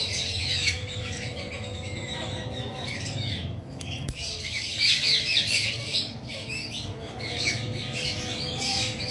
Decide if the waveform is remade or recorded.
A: remade